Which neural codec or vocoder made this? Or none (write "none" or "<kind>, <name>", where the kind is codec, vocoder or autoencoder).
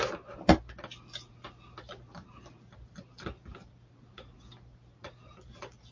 none